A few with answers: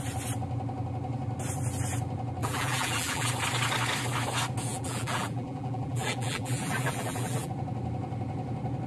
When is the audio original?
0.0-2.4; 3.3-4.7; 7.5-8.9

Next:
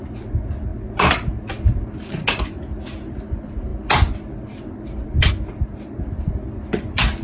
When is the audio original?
0.0-7.2